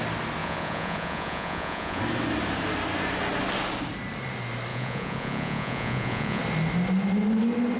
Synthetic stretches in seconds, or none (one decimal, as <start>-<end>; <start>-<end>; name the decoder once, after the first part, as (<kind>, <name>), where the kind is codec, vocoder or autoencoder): 0.4-2.0 (vocoder, Vocos); 4.7-6.4